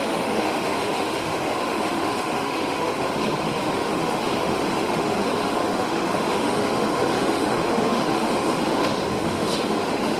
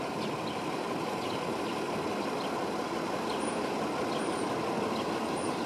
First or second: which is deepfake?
first